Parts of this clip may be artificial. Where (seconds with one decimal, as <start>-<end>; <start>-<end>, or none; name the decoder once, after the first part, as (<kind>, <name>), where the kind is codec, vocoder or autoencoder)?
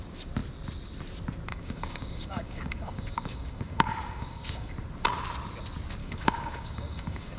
1.5-4.7 (codec, DAC); 6.0-7.4